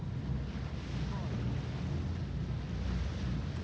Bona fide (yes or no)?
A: yes